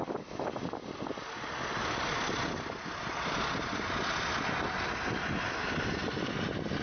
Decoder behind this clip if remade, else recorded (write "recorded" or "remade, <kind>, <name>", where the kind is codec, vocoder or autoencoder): recorded